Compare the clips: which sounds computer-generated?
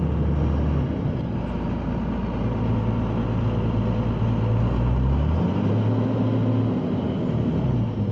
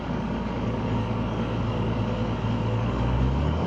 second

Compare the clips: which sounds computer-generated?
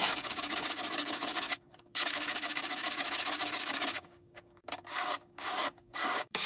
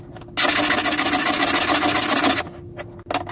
first